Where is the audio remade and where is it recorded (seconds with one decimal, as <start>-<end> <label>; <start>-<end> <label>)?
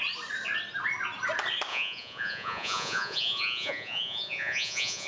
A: 0.0-1.7 recorded; 1.7-5.1 remade